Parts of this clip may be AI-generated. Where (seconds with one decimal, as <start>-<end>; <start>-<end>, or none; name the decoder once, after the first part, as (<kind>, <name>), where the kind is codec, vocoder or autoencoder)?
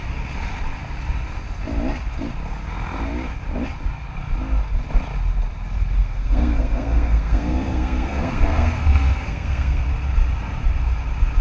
6.0-9.8 (codec, SNAC)